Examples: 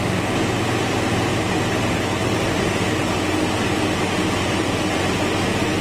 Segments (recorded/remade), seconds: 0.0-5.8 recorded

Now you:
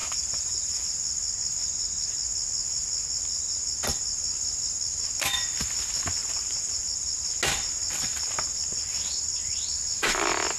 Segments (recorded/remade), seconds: 0.0-0.8 remade; 0.8-6.2 recorded; 6.2-6.8 remade; 6.8-10.6 recorded

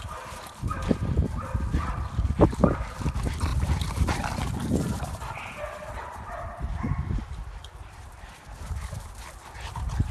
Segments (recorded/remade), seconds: 0.0-6.6 remade; 6.6-7.8 recorded; 7.8-10.1 remade